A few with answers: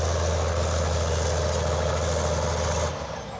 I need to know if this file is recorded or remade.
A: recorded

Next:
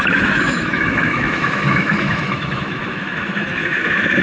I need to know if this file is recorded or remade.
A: remade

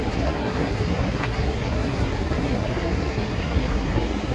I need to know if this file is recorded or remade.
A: remade